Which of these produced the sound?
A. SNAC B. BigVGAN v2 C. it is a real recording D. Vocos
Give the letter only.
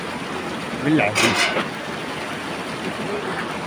C